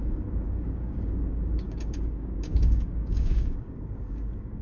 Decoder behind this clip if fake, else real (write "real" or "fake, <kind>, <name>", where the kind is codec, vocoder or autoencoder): fake, codec, DAC